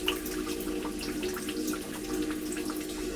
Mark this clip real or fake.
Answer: real